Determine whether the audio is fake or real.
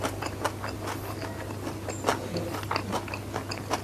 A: real